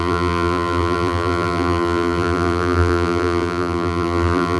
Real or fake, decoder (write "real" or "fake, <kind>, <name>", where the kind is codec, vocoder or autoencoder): fake, vocoder, BigVGAN v2